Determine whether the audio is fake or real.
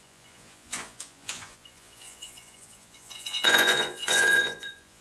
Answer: fake